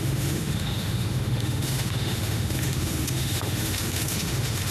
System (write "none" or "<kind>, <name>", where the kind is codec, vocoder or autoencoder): autoencoder, DAC-VAE